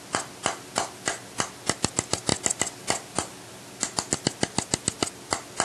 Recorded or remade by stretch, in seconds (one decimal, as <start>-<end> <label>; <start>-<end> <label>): 0.0-5.6 recorded